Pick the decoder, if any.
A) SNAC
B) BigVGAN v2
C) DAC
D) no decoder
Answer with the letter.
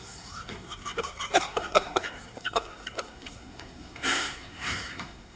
A